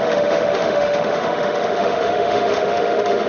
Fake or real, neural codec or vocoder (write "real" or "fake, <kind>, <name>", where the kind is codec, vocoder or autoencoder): fake, autoencoder, DAC-VAE